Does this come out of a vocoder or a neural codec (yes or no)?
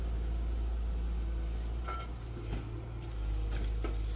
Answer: no